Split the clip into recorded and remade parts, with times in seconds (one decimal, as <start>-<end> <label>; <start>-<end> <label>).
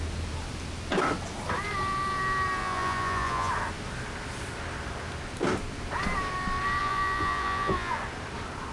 0.0-2.6 recorded; 2.6-3.5 remade; 3.5-6.8 recorded; 6.8-8.0 remade; 8.0-8.7 recorded